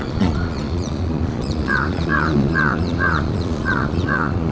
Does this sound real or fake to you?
fake